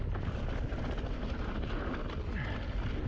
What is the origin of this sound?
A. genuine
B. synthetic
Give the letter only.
A